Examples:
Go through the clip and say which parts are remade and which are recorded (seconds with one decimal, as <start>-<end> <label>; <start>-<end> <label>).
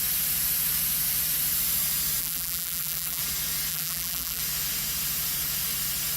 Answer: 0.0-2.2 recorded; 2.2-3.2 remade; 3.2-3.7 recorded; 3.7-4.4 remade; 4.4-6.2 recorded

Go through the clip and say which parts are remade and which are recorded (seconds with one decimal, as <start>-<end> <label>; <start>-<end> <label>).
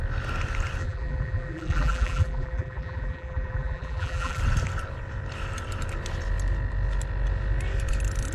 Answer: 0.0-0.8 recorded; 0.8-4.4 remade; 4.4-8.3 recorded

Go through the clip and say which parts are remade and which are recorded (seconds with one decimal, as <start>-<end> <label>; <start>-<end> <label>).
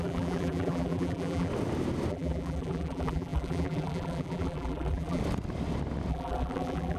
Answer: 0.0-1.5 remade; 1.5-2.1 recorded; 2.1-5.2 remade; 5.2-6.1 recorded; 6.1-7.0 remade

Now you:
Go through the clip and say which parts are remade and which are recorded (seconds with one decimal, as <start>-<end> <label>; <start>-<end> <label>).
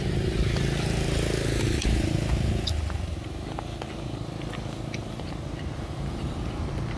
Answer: 0.0-5.0 recorded; 5.0-6.3 remade; 6.3-7.0 recorded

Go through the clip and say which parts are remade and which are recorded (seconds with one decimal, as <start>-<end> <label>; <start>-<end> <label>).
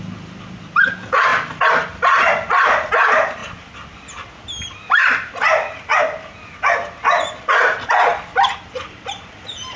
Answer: 0.0-1.3 recorded; 1.3-2.9 remade; 2.9-8.1 recorded; 8.1-9.8 remade